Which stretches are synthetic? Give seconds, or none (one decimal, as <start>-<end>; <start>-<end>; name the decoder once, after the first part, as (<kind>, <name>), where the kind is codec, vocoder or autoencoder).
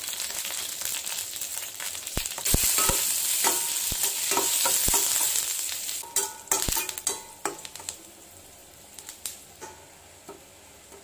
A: 1.5-2.4 (vocoder, BigVGAN v2)